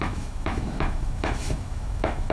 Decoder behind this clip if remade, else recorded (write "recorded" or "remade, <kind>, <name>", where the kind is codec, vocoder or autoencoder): remade, autoencoder, DAC-VAE